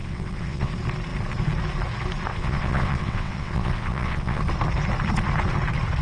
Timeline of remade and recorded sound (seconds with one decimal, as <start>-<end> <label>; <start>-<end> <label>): 0.0-0.7 remade; 0.7-2.3 recorded; 2.3-4.4 remade; 4.4-6.0 recorded